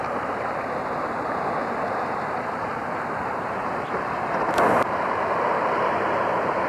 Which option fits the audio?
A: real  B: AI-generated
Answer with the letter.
B